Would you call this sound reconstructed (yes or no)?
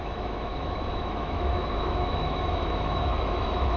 yes